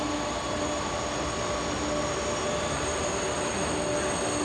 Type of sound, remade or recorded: recorded